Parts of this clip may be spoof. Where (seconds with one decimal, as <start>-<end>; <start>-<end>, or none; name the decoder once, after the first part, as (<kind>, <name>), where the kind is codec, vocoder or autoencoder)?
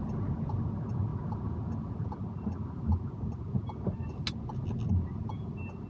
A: none